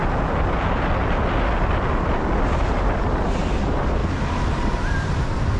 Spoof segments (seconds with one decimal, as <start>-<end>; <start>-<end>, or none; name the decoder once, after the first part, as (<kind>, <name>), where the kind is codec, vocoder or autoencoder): none